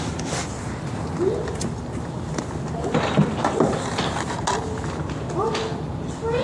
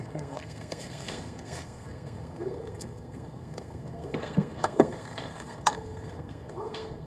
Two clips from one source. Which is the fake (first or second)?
second